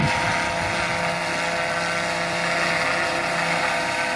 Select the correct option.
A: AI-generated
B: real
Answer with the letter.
B